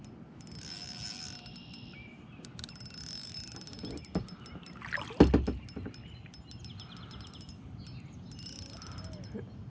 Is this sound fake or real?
real